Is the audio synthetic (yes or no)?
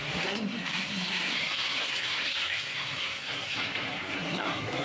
yes